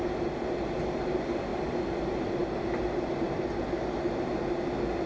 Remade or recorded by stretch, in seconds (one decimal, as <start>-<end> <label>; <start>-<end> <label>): 0.0-5.1 recorded